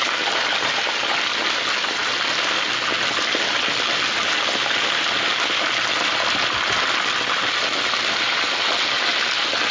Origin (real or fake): real